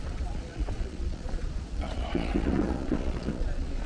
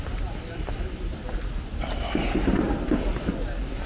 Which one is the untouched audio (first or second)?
second